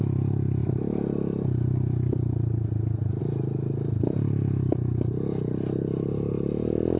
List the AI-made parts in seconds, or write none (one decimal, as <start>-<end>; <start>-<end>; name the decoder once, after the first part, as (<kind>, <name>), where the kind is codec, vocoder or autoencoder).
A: none